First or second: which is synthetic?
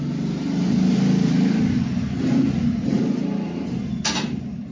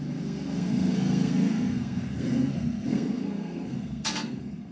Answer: second